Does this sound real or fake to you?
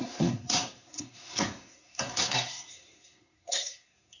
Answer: fake